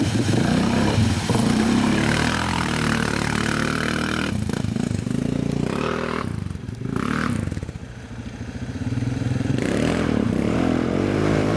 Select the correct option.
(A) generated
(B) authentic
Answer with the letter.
A